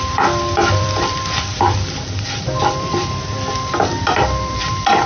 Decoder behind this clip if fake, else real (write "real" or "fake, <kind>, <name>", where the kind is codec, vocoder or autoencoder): fake, vocoder, BigVGAN v2